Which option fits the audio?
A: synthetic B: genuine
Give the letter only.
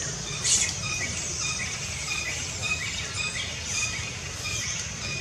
B